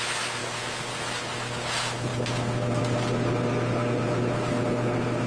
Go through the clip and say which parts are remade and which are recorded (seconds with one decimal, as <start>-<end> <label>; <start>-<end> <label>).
0.0-5.3 recorded